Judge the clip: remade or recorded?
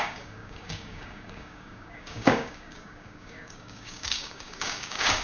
remade